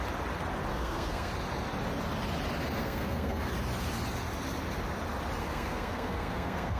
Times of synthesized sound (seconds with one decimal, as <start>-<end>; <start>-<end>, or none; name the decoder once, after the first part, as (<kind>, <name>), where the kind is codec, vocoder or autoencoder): 0.7-1.3 (codec, SNAC); 2.8-3.5; 5.4-6.8